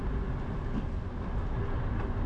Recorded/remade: recorded